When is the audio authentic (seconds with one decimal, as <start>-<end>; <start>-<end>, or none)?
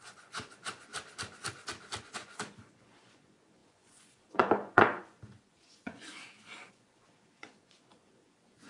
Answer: 0.9-2.0